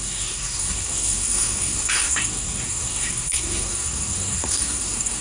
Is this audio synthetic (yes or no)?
yes